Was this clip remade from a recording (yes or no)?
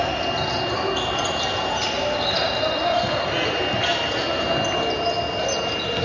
no